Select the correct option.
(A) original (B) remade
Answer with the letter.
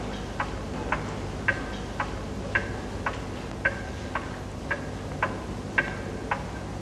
A